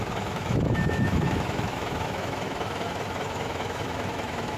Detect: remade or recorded remade